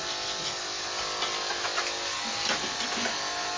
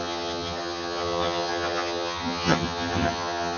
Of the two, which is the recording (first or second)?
first